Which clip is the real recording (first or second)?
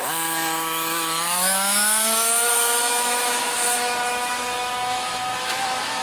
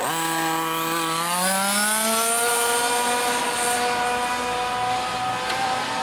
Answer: second